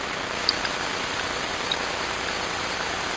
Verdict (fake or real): real